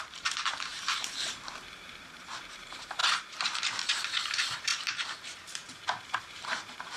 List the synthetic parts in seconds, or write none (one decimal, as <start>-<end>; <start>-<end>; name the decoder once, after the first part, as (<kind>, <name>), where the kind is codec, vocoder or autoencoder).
0.0-7.0 (vocoder, BigVGAN v2)